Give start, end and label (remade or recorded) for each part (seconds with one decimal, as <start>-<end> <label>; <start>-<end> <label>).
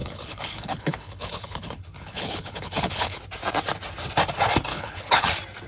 0.0-3.2 remade; 3.2-4.7 recorded; 4.7-5.3 remade; 5.3-5.7 recorded